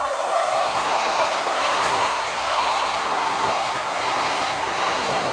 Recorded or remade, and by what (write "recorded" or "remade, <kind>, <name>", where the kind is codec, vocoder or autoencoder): remade, codec, SNAC